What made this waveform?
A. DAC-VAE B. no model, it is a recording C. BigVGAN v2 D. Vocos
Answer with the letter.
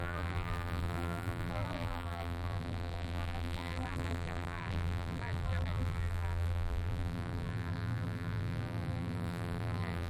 C